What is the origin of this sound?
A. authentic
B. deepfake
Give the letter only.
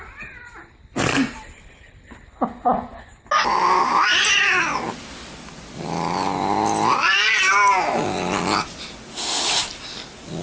A